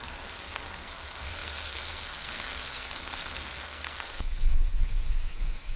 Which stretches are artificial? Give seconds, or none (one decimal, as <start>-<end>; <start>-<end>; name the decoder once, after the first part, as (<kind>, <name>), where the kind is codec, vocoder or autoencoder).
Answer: 0.0-5.8 (codec, SNAC)